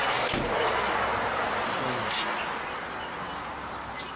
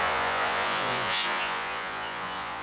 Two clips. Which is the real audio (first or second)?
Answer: first